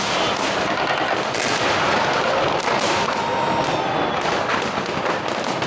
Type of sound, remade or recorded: recorded